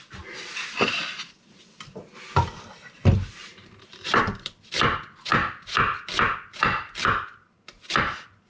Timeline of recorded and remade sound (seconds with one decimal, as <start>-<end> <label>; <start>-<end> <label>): 0.0-3.4 recorded; 3.4-4.5 remade; 4.5-8.5 recorded